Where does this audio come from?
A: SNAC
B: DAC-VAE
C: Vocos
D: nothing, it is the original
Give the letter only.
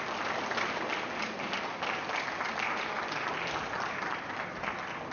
D